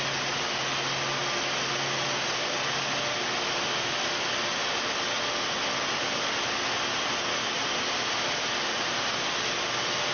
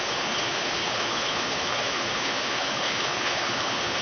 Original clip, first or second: first